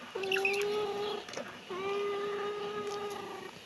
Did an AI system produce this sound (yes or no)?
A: no